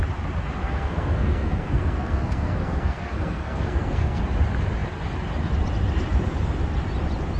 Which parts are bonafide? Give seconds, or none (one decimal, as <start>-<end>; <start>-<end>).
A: 0.0-0.6; 4.2-7.4